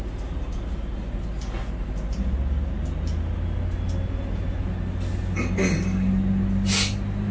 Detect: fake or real real